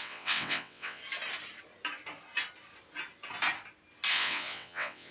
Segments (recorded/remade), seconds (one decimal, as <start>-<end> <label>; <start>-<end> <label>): 0.0-1.0 remade; 1.0-4.1 recorded; 4.1-5.1 remade